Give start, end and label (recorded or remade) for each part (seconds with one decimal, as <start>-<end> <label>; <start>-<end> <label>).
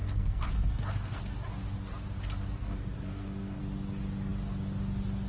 0.0-1.2 remade; 1.2-2.6 recorded; 2.6-3.6 remade; 3.6-5.3 recorded